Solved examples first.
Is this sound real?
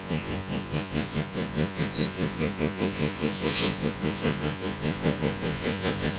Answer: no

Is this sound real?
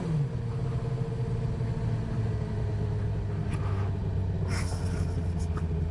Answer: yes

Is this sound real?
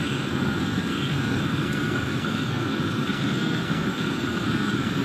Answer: no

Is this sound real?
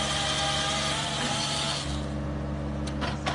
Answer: yes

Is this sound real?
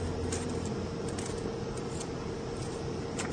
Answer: yes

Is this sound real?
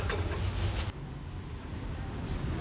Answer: yes